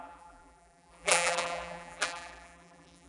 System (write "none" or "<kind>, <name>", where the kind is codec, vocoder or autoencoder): vocoder, BigVGAN v2